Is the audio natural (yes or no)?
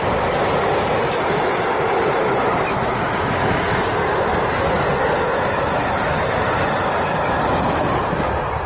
yes